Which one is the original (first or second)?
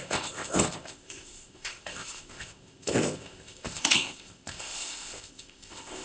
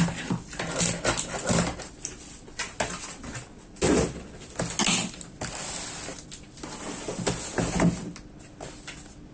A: second